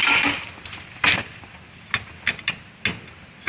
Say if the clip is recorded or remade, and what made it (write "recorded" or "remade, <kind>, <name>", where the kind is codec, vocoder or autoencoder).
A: recorded